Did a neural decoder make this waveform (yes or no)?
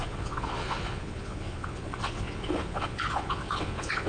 yes